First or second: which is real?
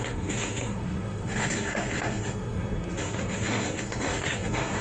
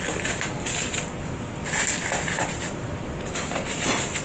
second